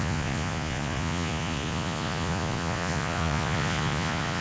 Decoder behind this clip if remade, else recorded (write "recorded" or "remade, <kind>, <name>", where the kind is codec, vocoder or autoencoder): remade, vocoder, Vocos